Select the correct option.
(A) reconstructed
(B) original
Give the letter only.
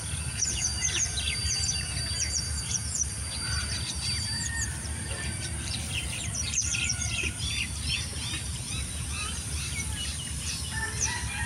A